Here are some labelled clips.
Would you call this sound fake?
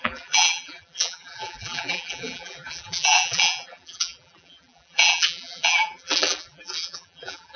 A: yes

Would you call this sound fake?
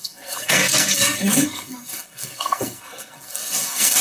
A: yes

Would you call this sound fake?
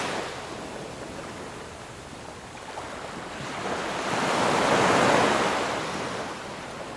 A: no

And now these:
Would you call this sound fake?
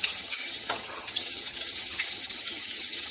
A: yes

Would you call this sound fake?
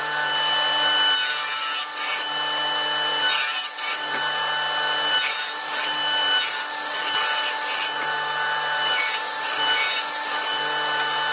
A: no